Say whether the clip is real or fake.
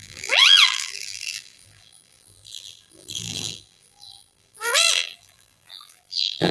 fake